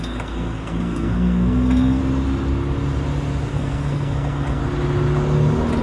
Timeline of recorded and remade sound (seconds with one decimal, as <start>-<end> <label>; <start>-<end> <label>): 0.0-2.0 remade; 2.0-3.5 recorded; 3.5-4.6 remade; 4.6-5.8 recorded